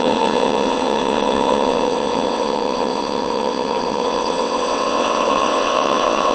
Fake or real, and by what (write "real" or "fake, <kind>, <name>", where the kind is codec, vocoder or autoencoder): fake, vocoder, WaveNeXt